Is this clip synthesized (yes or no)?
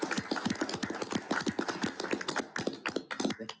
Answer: no